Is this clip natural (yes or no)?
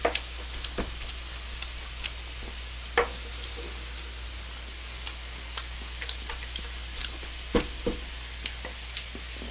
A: yes